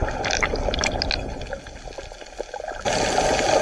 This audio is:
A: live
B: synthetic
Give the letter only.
A